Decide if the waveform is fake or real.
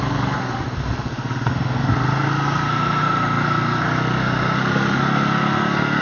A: fake